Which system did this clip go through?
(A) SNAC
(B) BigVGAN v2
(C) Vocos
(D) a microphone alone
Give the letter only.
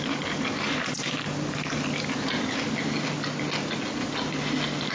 D